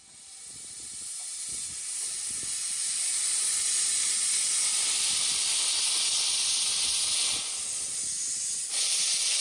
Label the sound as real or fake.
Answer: real